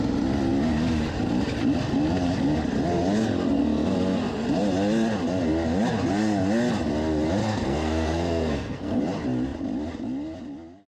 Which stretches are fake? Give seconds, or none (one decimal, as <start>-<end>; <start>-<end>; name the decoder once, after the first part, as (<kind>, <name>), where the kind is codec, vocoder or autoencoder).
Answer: 7.4-9.0 (codec, SNAC)